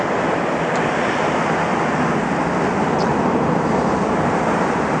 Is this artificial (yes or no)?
no